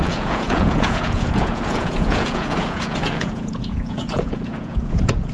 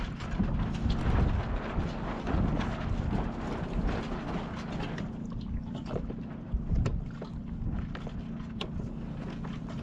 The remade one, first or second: first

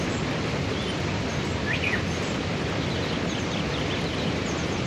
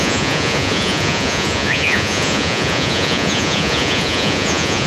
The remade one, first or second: second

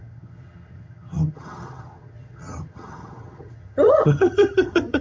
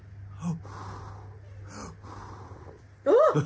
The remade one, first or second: first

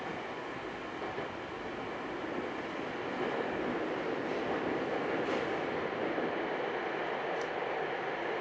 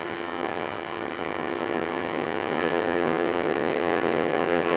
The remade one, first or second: second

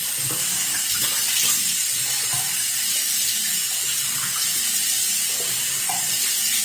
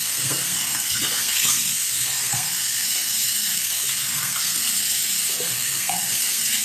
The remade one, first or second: second